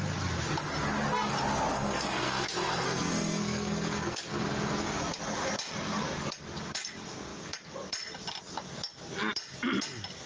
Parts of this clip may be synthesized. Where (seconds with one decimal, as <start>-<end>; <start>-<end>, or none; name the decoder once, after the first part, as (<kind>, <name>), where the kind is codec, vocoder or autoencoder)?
1.7-4.4 (codec, SNAC)